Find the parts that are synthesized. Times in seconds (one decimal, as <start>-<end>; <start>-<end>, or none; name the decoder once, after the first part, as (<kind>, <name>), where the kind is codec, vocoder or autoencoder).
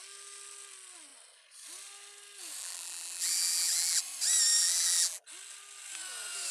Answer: 2.6-4.0 (vocoder, BigVGAN v2); 4.6-5.2